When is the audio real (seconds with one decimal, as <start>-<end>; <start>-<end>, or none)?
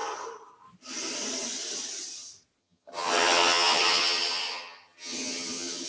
0.0-2.6